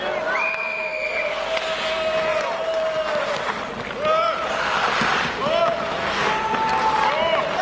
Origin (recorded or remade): recorded